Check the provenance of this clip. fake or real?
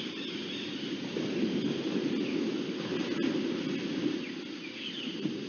real